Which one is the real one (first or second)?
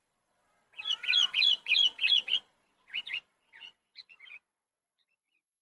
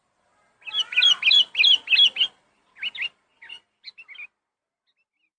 second